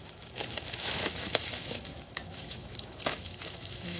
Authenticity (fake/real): fake